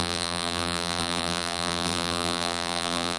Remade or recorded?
remade